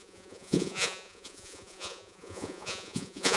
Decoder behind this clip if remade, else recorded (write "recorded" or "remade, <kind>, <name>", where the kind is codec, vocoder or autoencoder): remade, vocoder, Vocos